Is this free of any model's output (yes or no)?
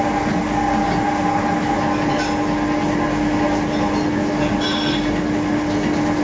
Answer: yes